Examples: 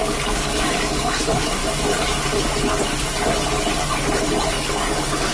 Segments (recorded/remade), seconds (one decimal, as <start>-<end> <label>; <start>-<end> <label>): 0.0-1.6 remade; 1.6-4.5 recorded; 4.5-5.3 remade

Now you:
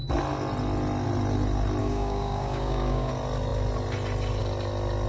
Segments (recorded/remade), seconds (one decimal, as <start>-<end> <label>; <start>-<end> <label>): 0.0-1.8 recorded; 1.8-3.1 remade; 3.1-5.1 recorded

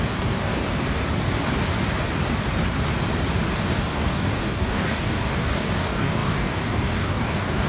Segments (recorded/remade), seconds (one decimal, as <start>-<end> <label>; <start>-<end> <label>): 0.0-0.6 remade; 0.6-3.6 recorded; 3.6-7.7 remade

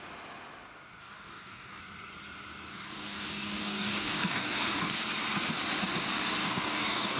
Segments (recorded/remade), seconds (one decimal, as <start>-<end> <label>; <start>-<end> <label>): 0.0-1.0 recorded; 1.0-1.8 remade; 1.8-2.7 recorded; 2.7-4.9 remade; 4.9-6.4 recorded; 6.4-7.2 remade